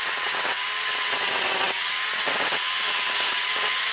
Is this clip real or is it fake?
fake